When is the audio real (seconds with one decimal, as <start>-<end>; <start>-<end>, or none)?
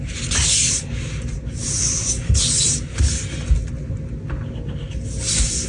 0.0-5.7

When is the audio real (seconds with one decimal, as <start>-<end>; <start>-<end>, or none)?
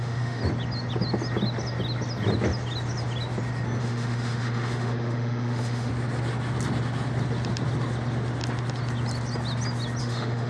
0.4-3.8; 5.9-10.0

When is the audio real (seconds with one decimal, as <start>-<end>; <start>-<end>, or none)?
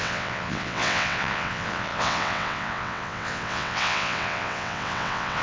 none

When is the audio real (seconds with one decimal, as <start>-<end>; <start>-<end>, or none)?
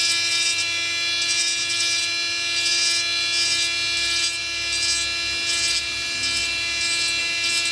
0.0-7.7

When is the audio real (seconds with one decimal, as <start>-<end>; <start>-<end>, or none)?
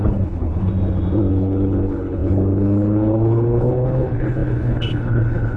0.7-1.3